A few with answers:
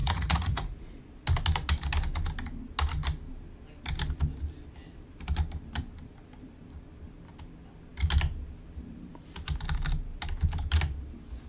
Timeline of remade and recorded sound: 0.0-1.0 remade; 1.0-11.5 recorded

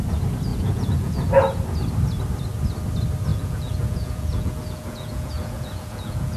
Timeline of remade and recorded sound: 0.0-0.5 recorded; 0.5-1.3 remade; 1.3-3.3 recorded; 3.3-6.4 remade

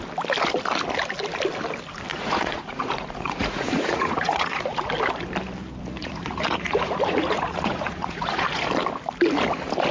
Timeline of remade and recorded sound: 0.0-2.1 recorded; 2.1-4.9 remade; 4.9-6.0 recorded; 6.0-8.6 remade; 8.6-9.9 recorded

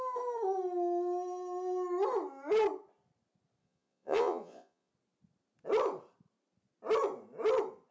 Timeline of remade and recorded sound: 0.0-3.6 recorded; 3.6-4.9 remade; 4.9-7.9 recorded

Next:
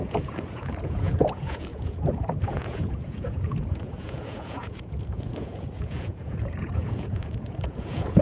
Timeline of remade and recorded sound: 0.0-8.2 remade

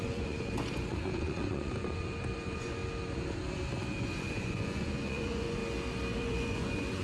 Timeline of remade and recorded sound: 0.0-2.8 remade; 2.8-4.0 recorded; 4.0-5.6 remade; 5.6-6.2 recorded; 6.2-7.0 remade

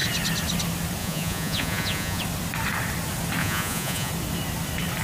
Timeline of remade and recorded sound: 0.0-1.0 recorded; 1.0-2.2 remade; 2.2-3.4 recorded; 3.4-4.1 remade; 4.1-5.0 recorded